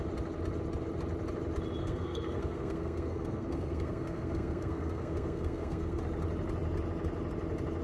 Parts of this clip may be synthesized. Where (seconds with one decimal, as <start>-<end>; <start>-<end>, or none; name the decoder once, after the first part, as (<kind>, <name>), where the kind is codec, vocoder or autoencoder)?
1.8-6.0 (codec, SNAC)